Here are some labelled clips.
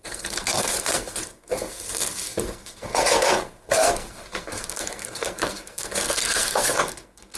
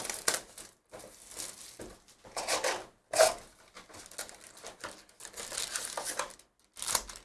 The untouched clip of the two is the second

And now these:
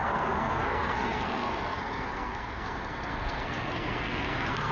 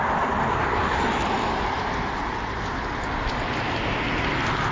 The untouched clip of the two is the second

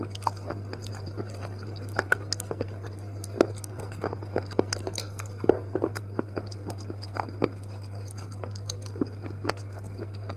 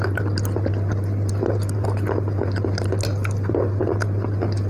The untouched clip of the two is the second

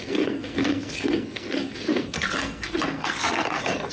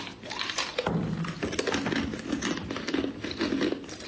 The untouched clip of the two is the second